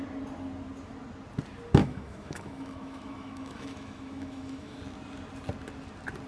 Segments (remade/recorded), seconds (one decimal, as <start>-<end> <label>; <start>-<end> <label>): 0.0-1.8 recorded; 1.8-4.8 remade; 4.8-6.3 recorded